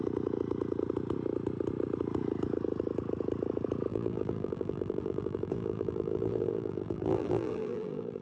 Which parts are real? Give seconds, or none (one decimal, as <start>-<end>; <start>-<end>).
0.0-3.9